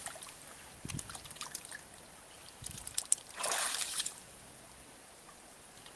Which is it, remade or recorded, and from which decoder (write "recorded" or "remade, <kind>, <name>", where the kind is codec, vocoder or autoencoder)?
remade, vocoder, BigVGAN v2